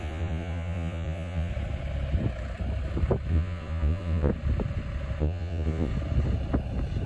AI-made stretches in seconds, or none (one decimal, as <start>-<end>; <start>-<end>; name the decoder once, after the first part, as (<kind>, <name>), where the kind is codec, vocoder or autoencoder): 0.0-1.5 (vocoder, Vocos); 3.3-4.3; 5.2-5.9